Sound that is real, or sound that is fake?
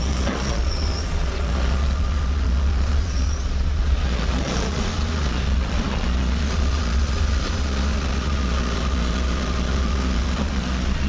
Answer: fake